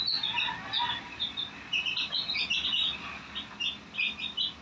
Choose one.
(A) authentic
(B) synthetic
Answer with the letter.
A